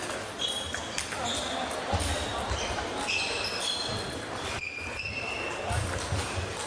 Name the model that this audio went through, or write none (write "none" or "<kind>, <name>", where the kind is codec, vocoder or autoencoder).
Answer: none